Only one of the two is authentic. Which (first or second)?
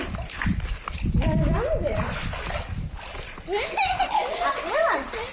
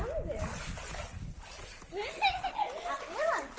second